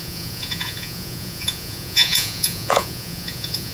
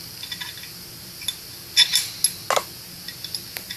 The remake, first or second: first